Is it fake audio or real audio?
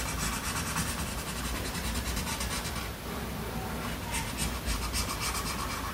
real